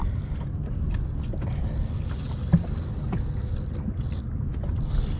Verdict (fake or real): real